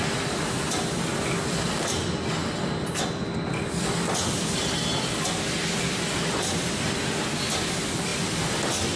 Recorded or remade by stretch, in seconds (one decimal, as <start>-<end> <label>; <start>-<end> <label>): 0.0-9.0 recorded

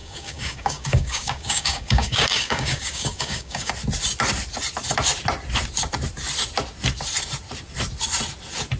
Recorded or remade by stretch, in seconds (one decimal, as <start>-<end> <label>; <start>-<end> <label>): 0.0-3.7 remade; 3.7-8.8 recorded

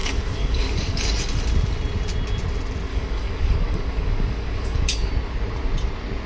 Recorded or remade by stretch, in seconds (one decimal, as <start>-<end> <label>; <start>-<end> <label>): 0.0-1.2 remade; 1.2-2.9 recorded; 2.9-5.1 remade; 5.1-6.3 recorded